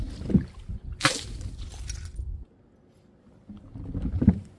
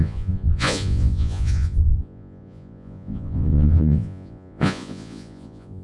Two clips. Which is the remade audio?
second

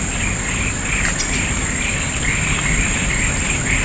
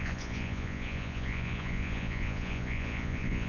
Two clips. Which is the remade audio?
second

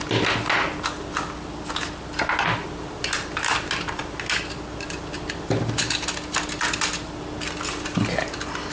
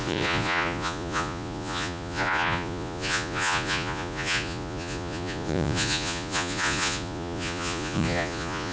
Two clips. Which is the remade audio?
second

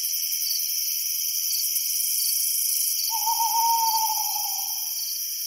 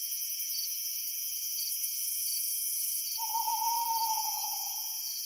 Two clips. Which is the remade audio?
second